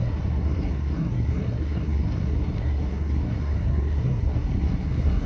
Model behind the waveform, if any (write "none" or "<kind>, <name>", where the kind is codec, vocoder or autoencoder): codec, SNAC